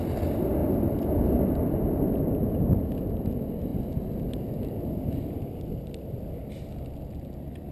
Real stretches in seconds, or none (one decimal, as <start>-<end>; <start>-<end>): 0.0-7.7